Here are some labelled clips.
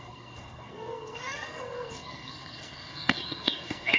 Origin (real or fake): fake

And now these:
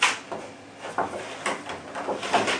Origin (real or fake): real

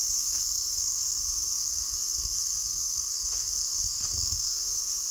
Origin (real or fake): fake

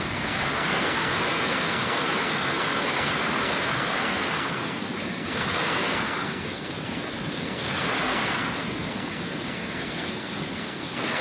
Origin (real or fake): fake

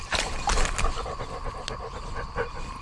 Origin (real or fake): real